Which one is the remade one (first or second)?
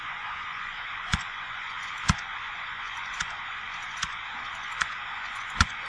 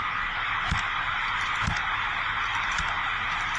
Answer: first